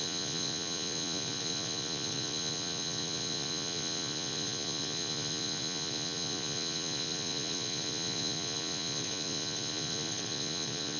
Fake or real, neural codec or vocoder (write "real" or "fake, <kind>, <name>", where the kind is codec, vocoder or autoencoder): fake, vocoder, Vocos